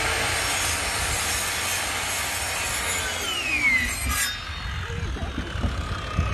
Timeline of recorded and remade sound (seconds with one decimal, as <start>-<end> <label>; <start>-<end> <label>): 0.0-6.3 recorded